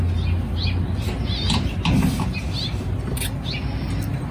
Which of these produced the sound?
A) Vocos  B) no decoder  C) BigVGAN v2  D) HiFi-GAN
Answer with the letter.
B